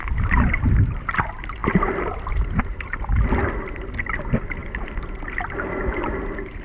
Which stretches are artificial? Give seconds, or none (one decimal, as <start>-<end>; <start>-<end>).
none